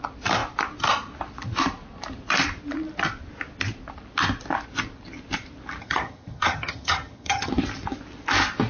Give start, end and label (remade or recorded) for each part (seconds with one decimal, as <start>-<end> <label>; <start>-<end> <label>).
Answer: 0.0-5.8 recorded; 5.8-7.5 remade; 7.5-8.7 recorded